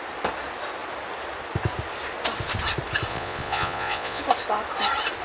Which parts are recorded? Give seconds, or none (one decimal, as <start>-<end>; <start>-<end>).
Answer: 0.0-3.1; 4.2-5.2